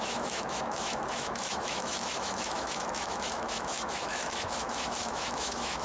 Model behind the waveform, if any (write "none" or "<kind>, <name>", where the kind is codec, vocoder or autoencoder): autoencoder, DAC-VAE